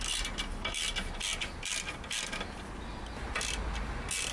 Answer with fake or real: real